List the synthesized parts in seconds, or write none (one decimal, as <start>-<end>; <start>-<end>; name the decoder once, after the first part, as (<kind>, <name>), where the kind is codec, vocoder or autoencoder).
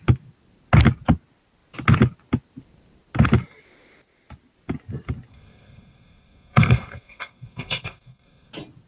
5.3-8.5 (codec, SNAC)